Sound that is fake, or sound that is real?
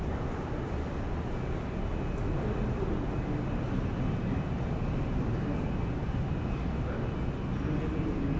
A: real